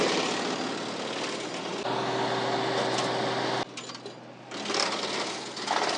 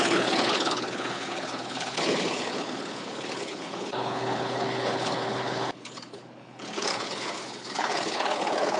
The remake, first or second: second